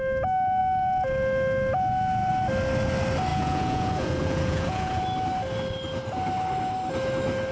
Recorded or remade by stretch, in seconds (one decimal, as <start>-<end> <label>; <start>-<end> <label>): 0.0-3.3 recorded; 3.3-5.0 remade; 5.0-7.5 recorded